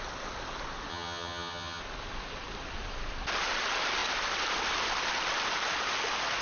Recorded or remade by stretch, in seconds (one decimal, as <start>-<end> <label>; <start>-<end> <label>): 0.0-0.9 recorded; 0.9-1.8 remade; 1.8-6.4 recorded